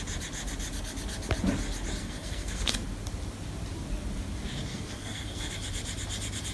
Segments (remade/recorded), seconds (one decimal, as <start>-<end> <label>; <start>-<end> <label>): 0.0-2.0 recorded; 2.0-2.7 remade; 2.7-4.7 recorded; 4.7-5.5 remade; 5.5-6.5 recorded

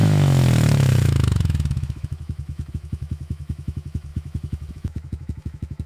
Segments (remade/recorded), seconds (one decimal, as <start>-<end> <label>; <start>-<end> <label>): 0.0-5.9 remade

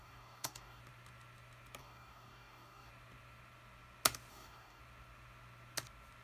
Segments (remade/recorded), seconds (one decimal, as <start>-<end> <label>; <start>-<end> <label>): 0.0-0.8 remade; 0.8-1.8 recorded; 1.8-2.9 remade; 2.9-4.3 recorded; 4.3-4.8 remade; 4.8-6.2 recorded